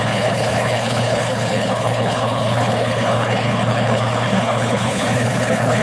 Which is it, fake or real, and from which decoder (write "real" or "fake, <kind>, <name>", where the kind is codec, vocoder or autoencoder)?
fake, codec, HILCodec